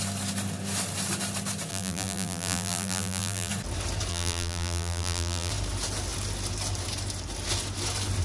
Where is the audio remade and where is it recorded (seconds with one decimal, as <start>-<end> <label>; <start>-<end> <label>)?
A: 0.0-1.7 recorded; 1.7-3.5 remade; 3.5-4.1 recorded; 4.1-5.5 remade; 5.5-8.2 recorded